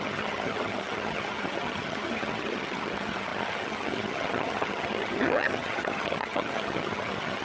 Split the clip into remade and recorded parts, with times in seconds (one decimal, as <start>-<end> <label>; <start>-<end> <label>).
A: 0.0-7.4 remade